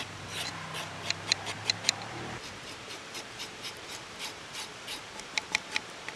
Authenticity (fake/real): fake